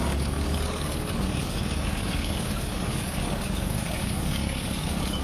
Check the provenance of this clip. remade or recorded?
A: remade